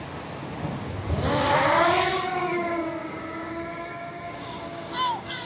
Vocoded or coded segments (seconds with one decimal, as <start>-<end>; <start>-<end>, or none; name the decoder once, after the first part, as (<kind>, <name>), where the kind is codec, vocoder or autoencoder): 2.1-5.5 (codec, DAC)